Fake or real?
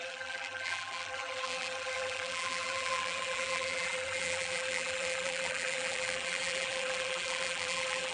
fake